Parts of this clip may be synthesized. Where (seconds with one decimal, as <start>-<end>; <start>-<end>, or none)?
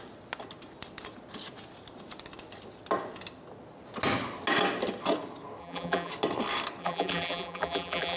5.6-6.1; 6.8-8.2